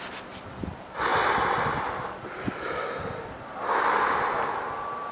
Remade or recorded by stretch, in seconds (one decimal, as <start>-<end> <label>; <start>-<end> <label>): 0.0-5.1 recorded